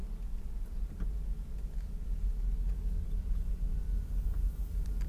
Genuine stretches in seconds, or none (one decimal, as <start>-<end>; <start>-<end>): 0.0-3.1; 3.7-5.1